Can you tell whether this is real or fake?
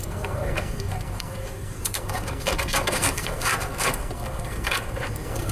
fake